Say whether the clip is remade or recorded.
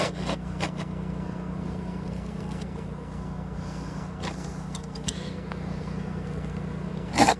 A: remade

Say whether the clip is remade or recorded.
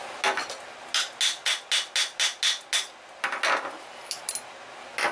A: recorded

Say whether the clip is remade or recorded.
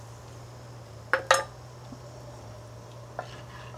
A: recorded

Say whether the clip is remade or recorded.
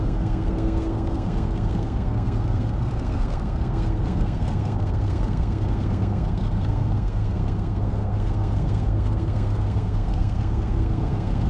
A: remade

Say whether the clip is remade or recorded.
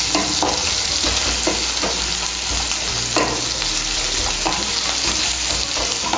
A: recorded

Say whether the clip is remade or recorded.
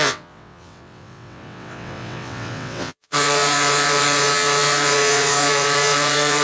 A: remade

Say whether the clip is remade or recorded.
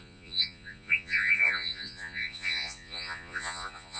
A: remade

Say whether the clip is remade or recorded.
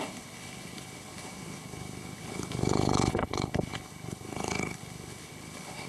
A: remade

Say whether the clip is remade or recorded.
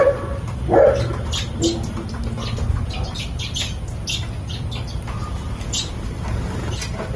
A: recorded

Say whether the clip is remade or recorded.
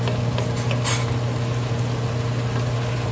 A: recorded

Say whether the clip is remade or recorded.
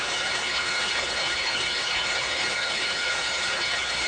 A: remade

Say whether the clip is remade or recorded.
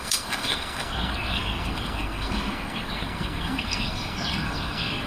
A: remade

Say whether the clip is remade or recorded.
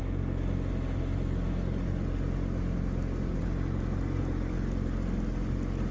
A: recorded